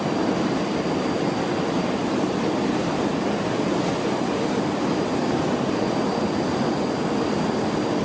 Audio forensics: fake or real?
real